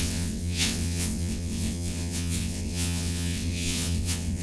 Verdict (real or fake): fake